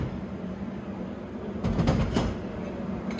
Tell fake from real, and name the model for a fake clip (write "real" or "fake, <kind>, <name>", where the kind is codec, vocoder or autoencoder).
real